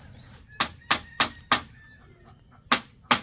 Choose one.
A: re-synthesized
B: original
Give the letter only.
B